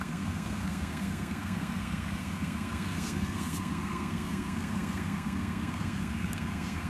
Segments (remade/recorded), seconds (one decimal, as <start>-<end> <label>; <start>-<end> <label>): 0.0-6.9 remade